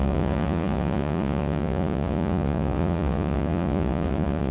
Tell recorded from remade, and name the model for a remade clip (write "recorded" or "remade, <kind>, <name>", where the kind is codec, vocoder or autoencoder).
remade, vocoder, Vocos